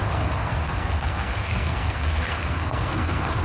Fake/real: fake